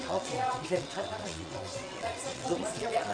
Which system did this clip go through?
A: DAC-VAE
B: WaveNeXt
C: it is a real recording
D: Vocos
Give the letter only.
B